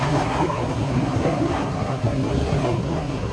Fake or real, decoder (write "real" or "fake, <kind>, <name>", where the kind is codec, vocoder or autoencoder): fake, codec, SNAC